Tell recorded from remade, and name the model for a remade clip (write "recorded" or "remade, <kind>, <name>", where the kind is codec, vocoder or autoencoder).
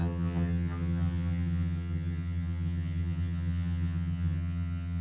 remade, vocoder, HiFi-GAN